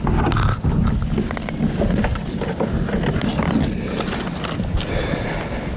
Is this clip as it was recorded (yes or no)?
yes